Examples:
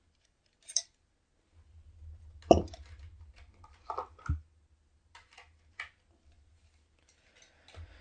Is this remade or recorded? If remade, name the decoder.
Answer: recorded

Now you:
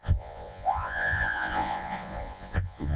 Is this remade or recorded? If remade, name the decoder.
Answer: remade, vocoder, Vocos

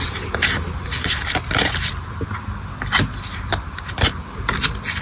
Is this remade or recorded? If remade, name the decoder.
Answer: recorded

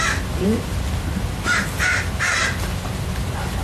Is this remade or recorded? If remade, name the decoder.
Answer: recorded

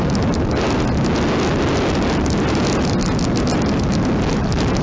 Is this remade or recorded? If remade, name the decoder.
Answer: recorded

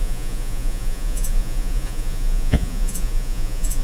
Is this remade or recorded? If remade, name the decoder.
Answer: remade, vocoder, Vocos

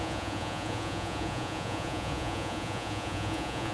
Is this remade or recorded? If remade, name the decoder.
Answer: remade, vocoder, Vocos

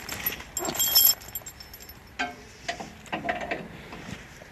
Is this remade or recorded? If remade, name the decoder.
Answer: recorded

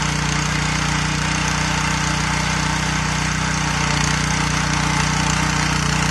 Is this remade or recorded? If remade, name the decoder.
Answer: recorded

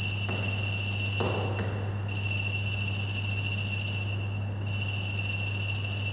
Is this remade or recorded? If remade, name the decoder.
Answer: recorded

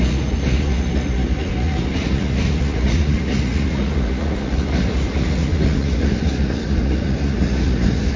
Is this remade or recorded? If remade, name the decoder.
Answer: remade, vocoder, Vocos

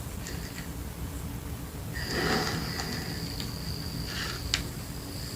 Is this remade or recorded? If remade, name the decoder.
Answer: recorded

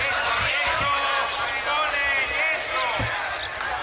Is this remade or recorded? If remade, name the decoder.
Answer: recorded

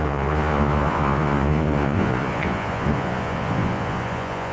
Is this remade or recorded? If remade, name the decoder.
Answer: remade, vocoder, Vocos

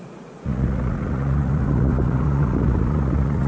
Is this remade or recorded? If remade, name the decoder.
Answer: remade, vocoder, Vocos